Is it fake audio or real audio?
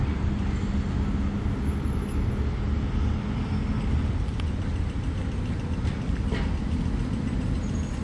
real